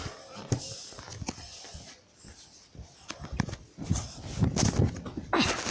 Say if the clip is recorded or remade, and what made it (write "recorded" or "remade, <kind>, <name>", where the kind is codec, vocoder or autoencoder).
recorded